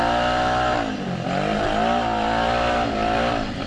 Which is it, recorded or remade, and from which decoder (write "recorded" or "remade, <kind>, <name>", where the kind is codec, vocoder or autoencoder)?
recorded